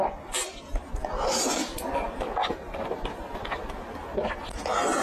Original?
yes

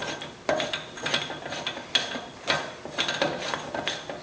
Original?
yes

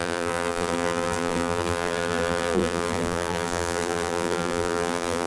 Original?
no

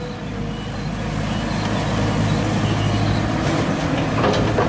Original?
yes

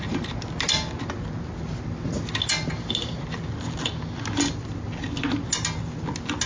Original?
yes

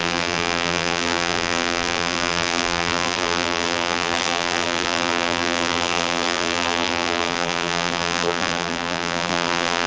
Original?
no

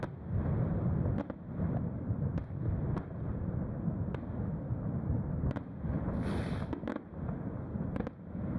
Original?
yes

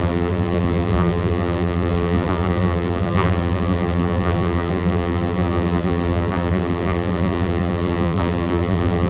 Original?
no